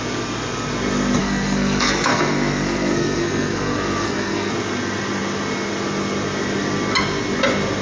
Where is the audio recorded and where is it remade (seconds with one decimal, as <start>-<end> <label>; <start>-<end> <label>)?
0.0-1.2 recorded; 1.2-4.5 remade; 4.5-7.8 recorded